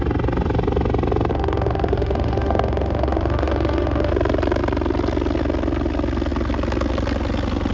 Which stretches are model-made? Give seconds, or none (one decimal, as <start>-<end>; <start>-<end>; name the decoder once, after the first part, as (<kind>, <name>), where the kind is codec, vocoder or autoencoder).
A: 1.3-4.1 (autoencoder, DAC-VAE)